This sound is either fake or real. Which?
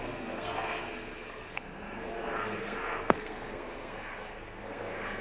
fake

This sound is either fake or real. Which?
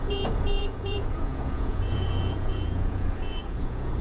fake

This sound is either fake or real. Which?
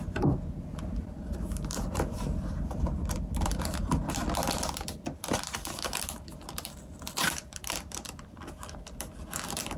fake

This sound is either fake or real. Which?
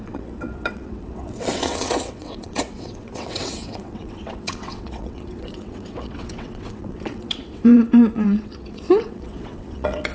fake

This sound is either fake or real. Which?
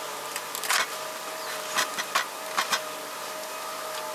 real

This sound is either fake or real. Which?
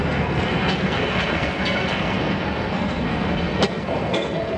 fake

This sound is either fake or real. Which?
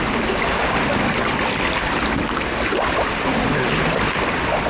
real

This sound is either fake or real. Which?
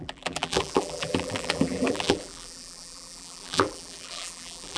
fake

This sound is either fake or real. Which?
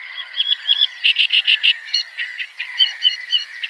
fake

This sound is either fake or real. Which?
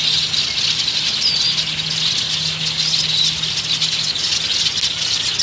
real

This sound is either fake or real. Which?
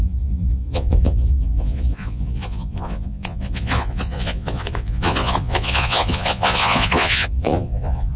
fake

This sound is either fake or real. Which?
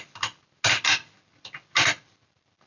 real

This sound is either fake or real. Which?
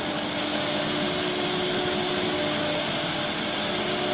real